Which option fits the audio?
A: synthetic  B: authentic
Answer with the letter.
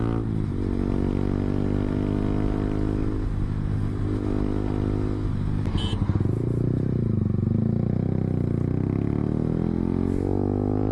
B